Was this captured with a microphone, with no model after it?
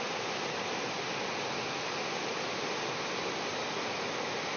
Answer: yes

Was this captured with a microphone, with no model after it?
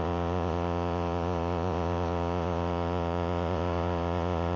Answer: no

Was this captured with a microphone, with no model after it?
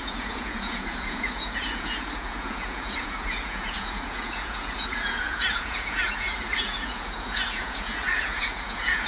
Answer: no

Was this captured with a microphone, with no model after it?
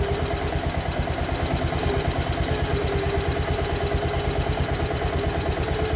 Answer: yes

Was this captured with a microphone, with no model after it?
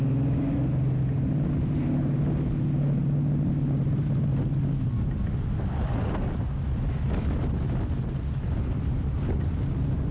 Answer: yes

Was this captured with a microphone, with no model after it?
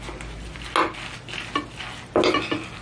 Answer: yes